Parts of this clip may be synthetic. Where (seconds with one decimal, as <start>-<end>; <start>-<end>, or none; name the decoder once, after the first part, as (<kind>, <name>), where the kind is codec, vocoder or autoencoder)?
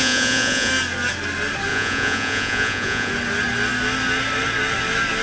0.0-0.7 (vocoder, Vocos); 1.7-3.1